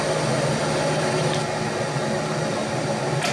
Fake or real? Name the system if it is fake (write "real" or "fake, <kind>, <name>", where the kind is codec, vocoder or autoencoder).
real